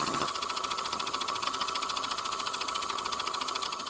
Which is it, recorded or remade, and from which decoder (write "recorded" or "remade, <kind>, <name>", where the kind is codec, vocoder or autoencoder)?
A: remade, vocoder, HiFi-GAN